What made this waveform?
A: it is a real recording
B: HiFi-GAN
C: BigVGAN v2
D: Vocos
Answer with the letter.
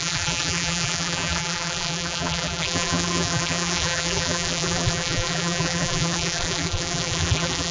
C